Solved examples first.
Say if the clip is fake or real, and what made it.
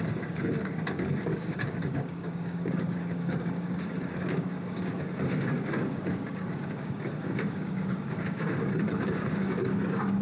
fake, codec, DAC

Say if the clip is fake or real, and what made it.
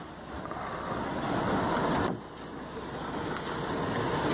real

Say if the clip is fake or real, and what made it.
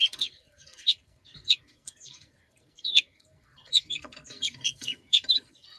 fake, codec, SNAC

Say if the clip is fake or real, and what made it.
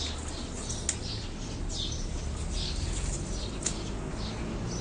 real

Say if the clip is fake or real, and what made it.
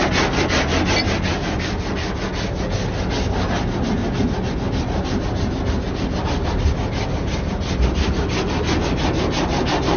real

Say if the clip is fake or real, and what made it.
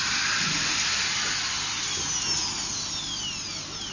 real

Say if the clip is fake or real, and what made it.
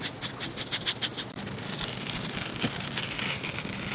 real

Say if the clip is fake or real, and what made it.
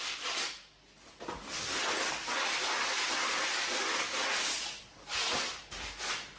real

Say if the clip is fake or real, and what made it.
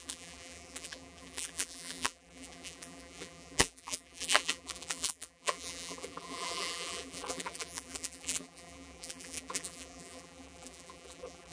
fake, vocoder, BigVGAN v2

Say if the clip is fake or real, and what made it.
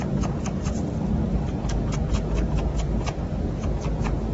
real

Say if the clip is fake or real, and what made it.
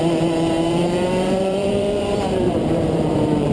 fake, vocoder, BigVGAN v2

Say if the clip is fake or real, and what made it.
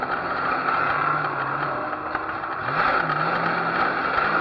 real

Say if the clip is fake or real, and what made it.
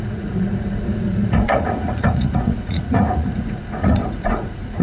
fake, vocoder, Vocos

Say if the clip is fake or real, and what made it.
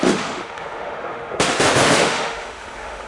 fake, autoencoder, DAC-VAE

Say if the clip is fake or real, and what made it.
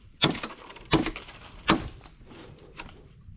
real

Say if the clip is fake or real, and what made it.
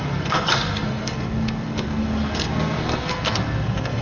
fake, codec, SNAC